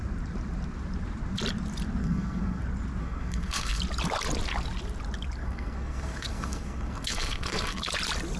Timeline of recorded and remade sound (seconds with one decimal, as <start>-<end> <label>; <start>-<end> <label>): 0.0-2.0 recorded; 2.0-2.6 remade; 2.6-3.0 recorded; 3.0-3.8 remade; 3.8-5.4 recorded; 5.4-7.8 remade; 7.8-8.4 recorded